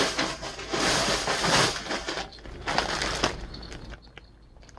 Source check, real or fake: real